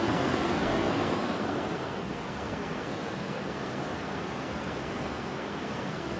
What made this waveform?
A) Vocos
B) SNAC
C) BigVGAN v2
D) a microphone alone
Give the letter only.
B